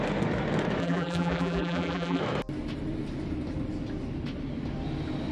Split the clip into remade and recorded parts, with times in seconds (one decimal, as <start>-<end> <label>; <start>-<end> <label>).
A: 0.0-0.8 recorded; 0.8-2.2 remade; 2.2-5.3 recorded